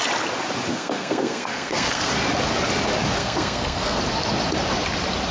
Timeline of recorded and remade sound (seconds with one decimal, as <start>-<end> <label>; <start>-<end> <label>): 0.0-0.7 recorded; 0.7-2.1 remade; 2.1-3.2 recorded; 3.2-4.0 remade; 4.0-5.3 recorded